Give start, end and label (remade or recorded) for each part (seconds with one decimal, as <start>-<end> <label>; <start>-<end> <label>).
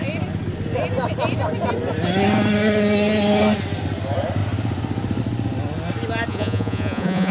0.0-6.3 recorded; 6.3-7.3 remade